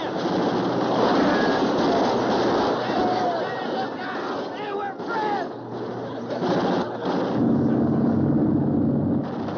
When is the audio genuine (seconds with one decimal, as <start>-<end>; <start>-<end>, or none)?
0.0-9.6